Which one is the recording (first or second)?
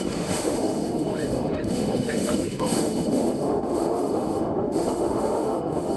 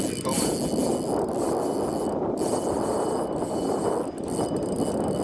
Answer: second